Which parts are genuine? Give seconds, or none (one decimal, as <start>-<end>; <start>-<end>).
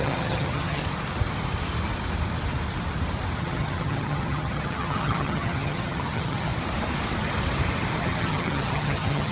0.8-3.4; 6.5-8.0